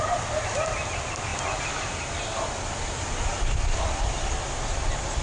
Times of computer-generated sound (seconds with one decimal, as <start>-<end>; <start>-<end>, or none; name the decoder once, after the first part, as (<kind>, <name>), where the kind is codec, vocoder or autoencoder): none